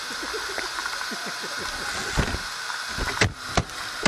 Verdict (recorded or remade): recorded